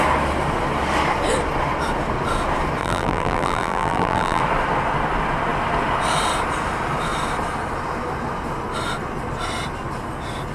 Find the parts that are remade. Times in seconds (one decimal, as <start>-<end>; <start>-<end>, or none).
2.8-4.4